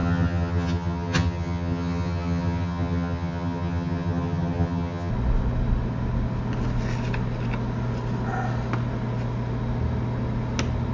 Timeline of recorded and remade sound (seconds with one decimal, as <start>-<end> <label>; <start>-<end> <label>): 0.0-5.1 remade; 5.1-10.9 recorded